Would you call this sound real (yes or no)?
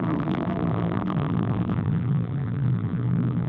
no